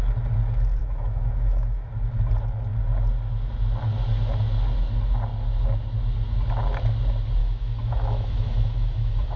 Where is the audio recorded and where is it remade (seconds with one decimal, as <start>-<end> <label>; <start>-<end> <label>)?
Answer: 0.0-0.8 recorded; 0.8-1.9 remade; 1.9-7.4 recorded; 7.4-9.4 remade